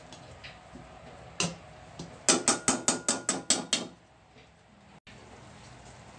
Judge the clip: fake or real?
real